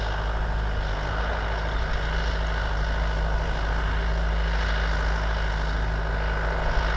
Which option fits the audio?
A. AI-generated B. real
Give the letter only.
B